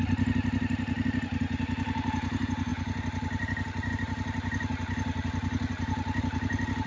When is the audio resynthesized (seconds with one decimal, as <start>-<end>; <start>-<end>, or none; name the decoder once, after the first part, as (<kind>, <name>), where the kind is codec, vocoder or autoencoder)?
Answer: none